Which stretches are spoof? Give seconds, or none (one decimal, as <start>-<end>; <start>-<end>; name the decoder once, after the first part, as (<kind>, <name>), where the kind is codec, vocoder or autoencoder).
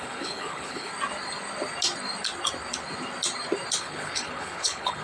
0.0-0.9 (codec, HILCodec); 3.8-5.0